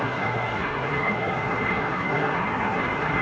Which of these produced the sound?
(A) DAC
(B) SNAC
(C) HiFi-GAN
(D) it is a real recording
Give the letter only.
B